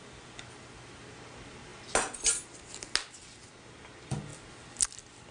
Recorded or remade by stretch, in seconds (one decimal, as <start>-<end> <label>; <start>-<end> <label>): 0.0-5.3 recorded